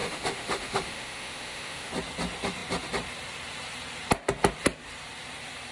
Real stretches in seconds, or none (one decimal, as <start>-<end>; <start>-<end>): 1.9-5.7